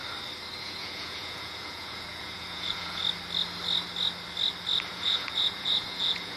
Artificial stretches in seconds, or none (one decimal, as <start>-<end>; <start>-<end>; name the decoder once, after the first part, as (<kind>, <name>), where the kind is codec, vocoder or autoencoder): 0.6-3.0 (vocoder, Vocos); 4.9-6.4